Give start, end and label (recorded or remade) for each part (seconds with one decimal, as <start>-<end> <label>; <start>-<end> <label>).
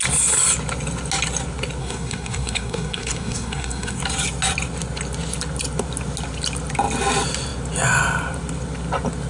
0.0-1.8 recorded; 1.8-4.0 remade; 4.0-9.3 recorded